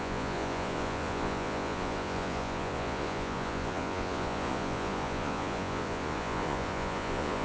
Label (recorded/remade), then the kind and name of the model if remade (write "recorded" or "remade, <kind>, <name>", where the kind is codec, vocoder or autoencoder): remade, vocoder, Vocos